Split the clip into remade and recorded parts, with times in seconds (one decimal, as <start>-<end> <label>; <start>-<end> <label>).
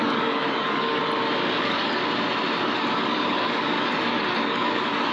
0.0-1.0 remade; 1.0-1.6 recorded; 1.6-2.0 remade; 2.0-2.6 recorded; 2.6-5.1 remade